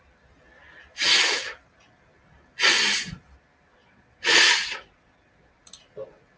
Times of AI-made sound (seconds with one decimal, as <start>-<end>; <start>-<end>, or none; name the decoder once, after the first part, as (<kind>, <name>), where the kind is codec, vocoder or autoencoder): 3.8-5.6 (vocoder, Vocos)